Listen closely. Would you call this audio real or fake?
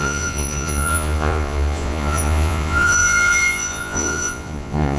fake